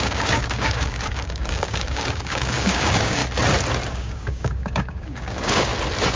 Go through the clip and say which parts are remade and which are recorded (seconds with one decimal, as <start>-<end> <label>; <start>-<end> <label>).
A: 0.0-3.2 remade; 3.2-3.9 recorded; 3.9-5.7 remade; 5.7-6.2 recorded